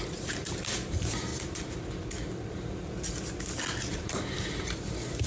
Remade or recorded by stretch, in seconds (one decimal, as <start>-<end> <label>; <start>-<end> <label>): 0.0-1.3 remade; 1.3-3.9 recorded; 3.9-5.3 remade